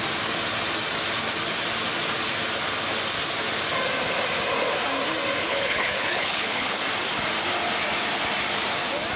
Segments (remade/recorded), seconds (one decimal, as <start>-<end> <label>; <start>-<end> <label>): 0.0-5.4 recorded; 5.4-6.8 remade; 6.8-9.2 recorded